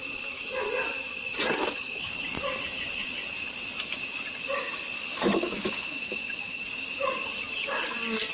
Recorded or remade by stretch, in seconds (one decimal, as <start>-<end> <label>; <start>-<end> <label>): 0.0-1.6 recorded; 1.6-2.1 remade; 2.1-5.1 recorded; 5.1-6.6 remade; 6.6-8.3 recorded

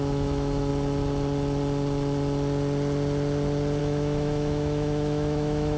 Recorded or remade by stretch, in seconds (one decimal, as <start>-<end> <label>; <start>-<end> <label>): 0.0-0.7 remade; 0.7-3.8 recorded; 3.8-5.8 remade

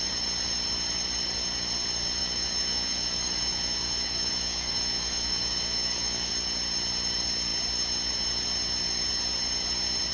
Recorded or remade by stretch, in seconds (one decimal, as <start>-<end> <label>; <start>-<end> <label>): 0.0-2.2 recorded; 2.2-6.3 remade; 6.3-10.1 recorded

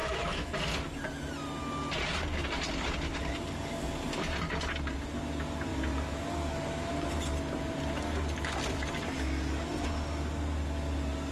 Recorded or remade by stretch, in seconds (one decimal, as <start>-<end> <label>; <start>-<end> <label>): 0.0-0.5 remade; 0.5-11.3 recorded

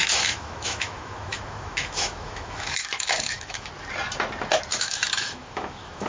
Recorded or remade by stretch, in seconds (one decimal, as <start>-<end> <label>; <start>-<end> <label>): 0.0-3.7 remade; 3.7-4.7 recorded; 4.7-6.1 remade

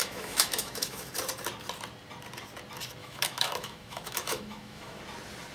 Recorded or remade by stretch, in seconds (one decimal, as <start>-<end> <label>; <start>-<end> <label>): 0.0-1.1 remade; 1.1-3.0 recorded; 3.0-5.0 remade; 5.0-5.5 recorded

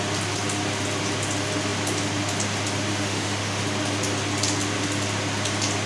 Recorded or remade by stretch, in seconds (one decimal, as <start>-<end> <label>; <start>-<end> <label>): 0.0-2.9 recorded; 2.9-3.6 remade; 3.6-5.9 recorded